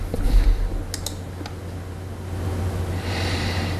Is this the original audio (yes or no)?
yes